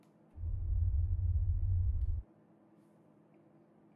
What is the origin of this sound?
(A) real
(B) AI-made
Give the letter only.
A